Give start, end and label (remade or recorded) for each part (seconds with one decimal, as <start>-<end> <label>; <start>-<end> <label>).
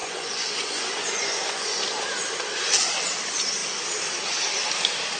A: 0.0-1.8 remade; 1.8-5.2 recorded